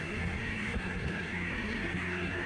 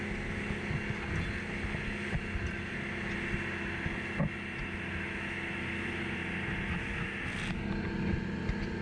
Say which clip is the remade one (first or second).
first